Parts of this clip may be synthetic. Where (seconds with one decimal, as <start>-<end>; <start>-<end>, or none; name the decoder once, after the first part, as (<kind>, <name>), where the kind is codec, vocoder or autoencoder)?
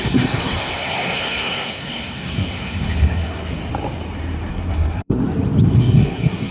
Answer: 0.0-3.6 (codec, SNAC); 4.5-5.2; 5.8-6.5